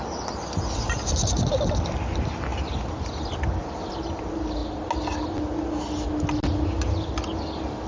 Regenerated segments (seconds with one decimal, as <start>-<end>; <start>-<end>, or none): none